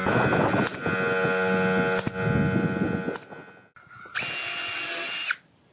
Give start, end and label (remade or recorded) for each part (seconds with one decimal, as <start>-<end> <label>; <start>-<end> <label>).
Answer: 0.0-5.7 recorded